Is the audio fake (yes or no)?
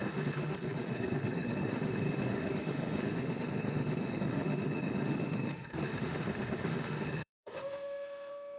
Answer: yes